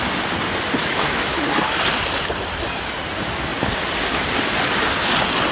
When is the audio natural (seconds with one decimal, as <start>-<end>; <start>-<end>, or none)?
0.0-0.8; 1.4-5.5